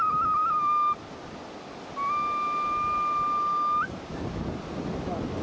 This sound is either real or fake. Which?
real